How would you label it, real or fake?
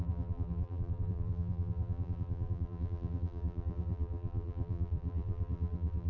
fake